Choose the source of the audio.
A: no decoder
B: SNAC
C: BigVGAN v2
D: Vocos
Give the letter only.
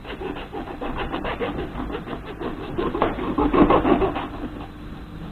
A